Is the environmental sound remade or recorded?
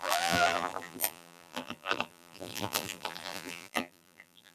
remade